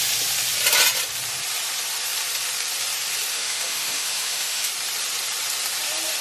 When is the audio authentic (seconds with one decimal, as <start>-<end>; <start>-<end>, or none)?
0.0-3.3; 4.7-6.2